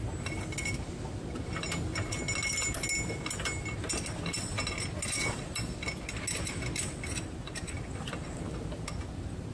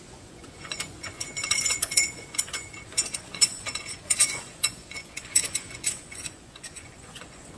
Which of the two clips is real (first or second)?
first